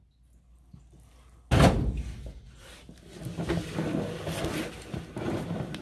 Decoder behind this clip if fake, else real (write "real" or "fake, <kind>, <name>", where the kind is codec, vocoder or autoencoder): real